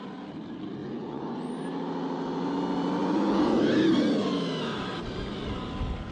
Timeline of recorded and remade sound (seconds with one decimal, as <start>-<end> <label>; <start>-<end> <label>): 0.0-0.8 recorded; 0.8-1.4 remade; 1.4-3.0 recorded; 3.0-3.6 remade; 3.6-6.1 recorded